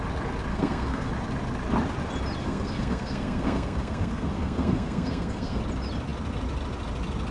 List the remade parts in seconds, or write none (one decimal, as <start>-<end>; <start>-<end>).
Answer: 0.5-1.1; 2.4-5.6

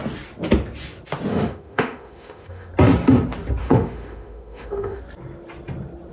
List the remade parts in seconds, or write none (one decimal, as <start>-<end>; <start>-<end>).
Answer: 1.3-2.7; 3.6-5.0

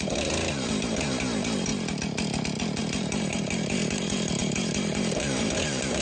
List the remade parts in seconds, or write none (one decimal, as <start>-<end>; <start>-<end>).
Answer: 0.0-1.7; 2.8-6.0

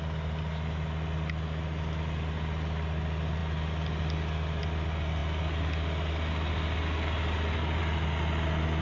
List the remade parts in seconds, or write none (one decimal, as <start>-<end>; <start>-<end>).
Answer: none